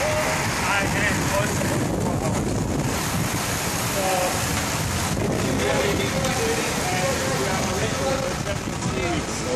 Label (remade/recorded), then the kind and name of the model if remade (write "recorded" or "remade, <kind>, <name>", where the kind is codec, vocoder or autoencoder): recorded